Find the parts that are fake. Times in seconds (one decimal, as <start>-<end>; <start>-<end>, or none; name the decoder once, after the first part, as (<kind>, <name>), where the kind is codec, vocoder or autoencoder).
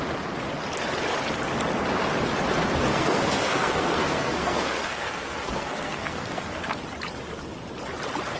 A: 2.9-6.8 (codec, SNAC)